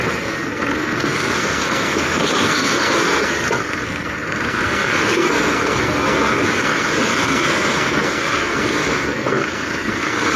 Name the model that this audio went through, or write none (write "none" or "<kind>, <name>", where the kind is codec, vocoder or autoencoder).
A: codec, SNAC